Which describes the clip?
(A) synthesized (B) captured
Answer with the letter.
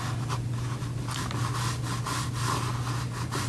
B